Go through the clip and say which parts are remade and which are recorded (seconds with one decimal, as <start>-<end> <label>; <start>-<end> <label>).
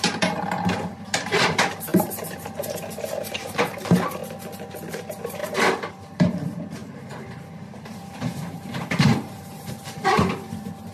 0.0-4.2 remade; 4.2-4.9 recorded; 4.9-5.4 remade; 5.4-5.9 recorded; 5.9-10.9 remade